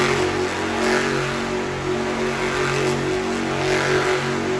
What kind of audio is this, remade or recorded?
recorded